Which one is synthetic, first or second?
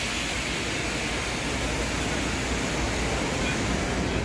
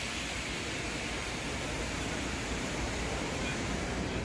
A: second